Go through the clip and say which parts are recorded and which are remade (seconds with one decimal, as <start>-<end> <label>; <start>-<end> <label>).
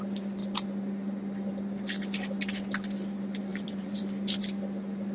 0.0-3.5 recorded; 3.5-4.0 remade; 4.0-5.1 recorded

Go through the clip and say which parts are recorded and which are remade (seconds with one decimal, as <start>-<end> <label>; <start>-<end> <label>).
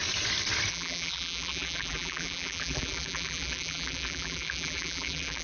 0.0-0.7 recorded; 0.7-5.4 remade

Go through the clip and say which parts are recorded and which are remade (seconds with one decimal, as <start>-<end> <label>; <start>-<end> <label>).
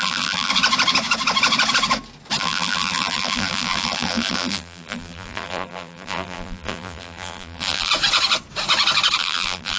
0.0-0.5 remade; 0.5-2.4 recorded; 2.4-7.9 remade; 7.9-9.2 recorded; 9.2-9.8 remade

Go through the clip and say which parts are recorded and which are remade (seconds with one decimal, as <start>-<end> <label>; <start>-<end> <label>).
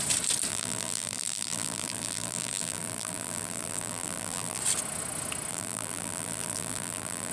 0.0-0.5 recorded; 0.5-4.6 remade; 4.6-5.5 recorded; 5.5-7.3 remade